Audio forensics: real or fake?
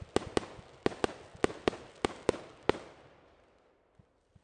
real